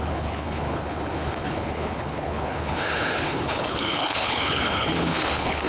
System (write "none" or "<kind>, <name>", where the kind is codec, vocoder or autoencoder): codec, HILCodec